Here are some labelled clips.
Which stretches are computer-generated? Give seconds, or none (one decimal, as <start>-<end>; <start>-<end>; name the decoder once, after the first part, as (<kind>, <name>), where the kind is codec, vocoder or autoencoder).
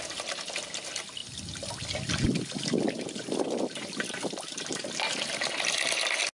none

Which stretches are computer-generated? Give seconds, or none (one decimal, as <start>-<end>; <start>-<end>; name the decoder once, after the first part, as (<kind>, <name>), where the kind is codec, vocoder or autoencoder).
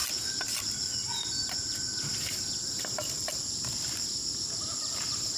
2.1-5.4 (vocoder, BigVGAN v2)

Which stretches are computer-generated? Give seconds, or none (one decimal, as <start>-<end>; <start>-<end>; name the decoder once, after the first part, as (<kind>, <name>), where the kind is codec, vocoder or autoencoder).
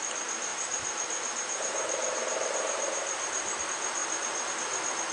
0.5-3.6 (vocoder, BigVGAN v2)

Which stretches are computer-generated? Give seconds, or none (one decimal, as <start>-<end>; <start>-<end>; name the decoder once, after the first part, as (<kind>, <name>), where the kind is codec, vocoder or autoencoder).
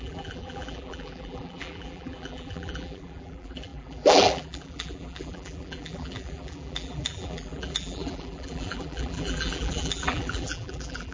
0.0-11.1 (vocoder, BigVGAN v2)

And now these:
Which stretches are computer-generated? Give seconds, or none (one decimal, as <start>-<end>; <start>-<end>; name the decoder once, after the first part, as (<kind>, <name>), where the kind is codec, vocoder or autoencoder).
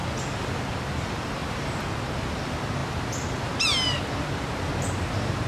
none